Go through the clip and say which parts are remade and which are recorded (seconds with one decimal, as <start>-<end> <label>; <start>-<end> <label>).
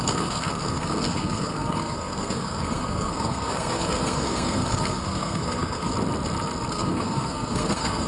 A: 0.0-5.9 remade; 5.9-6.7 recorded; 6.7-8.1 remade